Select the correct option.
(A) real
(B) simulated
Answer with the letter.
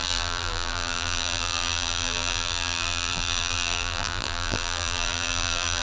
B